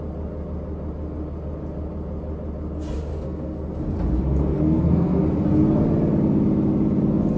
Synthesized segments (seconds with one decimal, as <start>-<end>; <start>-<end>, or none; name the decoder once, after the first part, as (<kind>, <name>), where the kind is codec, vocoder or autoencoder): 3.1-3.8 (codec, SNAC); 4.5-5.2

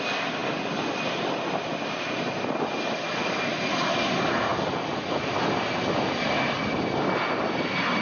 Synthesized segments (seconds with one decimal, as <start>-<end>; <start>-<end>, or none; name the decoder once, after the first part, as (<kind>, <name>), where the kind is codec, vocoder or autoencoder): none

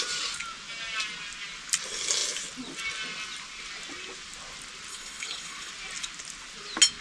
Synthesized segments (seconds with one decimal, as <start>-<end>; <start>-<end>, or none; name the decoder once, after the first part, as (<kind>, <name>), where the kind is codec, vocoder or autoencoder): 4.9-5.7 (codec, HILCodec)

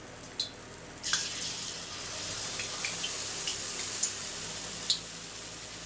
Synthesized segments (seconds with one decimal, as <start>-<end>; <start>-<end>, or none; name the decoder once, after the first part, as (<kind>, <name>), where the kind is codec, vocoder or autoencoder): none

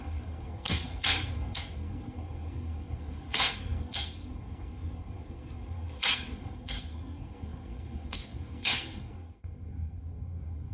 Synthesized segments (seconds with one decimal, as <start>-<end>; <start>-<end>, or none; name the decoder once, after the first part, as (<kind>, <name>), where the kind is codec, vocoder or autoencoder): 0.0-10.7 (codec, SNAC)